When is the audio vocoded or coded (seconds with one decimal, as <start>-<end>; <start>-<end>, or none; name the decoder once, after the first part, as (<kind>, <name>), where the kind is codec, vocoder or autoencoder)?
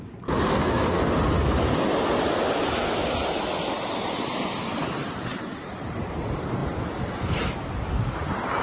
0.5-1.1 (codec, SNAC)